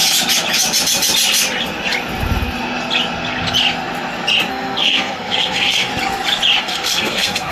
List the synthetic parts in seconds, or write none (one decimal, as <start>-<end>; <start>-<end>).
4.5-5.9; 6.6-7.5